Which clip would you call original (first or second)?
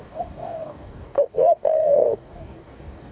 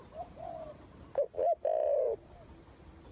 second